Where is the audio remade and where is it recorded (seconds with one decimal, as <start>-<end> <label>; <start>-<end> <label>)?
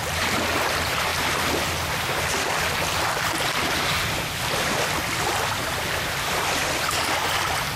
0.0-1.1 remade; 1.1-4.8 recorded; 4.8-7.8 remade